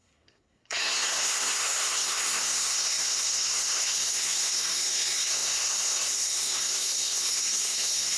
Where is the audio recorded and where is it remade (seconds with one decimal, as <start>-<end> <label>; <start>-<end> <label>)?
0.0-8.2 remade